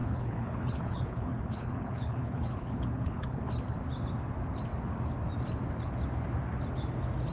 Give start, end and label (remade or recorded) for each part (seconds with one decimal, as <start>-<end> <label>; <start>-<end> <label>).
0.0-3.5 remade; 3.5-7.3 recorded